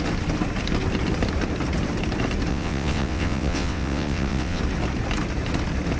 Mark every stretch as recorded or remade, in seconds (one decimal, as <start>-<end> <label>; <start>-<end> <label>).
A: 0.0-2.5 recorded; 2.5-4.6 remade; 4.6-6.0 recorded